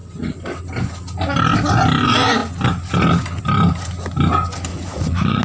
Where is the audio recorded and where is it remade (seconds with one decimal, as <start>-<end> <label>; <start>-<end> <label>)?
0.0-4.7 recorded; 4.7-5.4 remade